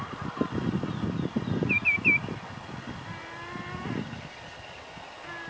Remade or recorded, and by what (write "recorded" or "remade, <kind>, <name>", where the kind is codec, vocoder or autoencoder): recorded